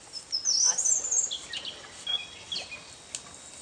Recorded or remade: recorded